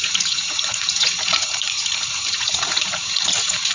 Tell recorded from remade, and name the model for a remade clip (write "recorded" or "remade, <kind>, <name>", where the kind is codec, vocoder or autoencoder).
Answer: remade, vocoder, Vocos